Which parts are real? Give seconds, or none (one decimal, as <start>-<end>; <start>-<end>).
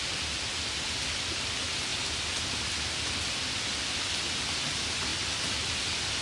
0.0-6.2